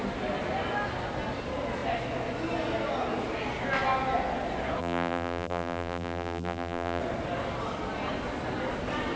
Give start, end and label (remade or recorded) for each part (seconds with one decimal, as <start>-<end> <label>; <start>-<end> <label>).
0.0-4.8 recorded; 4.8-7.0 remade; 7.0-9.2 recorded